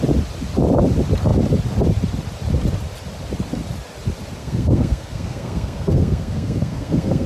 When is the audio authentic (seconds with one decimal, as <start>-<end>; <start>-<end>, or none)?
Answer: 0.0-4.4